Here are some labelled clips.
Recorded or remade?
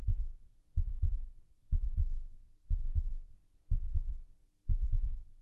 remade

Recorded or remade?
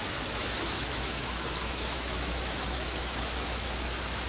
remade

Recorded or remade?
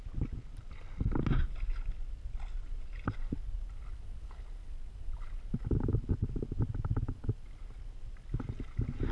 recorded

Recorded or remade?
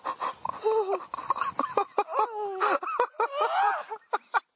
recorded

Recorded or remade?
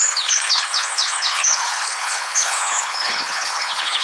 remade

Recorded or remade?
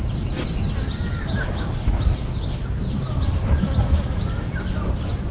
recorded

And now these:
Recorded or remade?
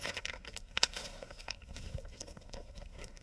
remade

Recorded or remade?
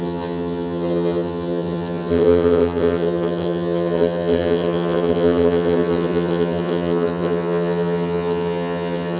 remade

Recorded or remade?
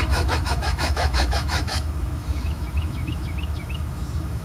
remade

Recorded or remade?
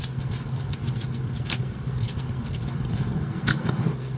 remade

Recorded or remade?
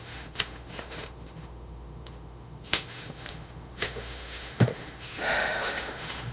remade